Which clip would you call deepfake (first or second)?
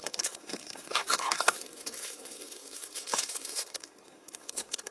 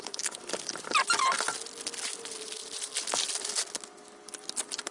first